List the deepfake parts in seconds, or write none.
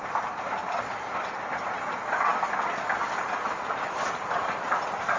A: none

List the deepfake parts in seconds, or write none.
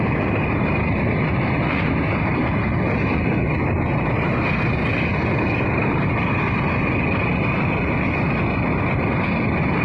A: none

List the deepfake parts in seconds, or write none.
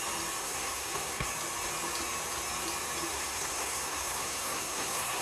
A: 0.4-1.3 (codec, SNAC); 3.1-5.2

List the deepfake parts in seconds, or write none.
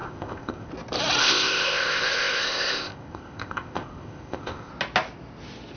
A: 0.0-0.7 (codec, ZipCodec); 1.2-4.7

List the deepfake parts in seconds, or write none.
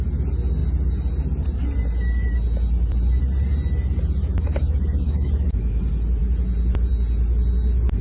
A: 4.2-5.8 (autoencoder, DAC-VAE)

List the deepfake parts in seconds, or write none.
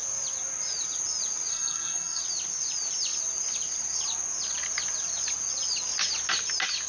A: 1.5-2.2 (codec, SNAC)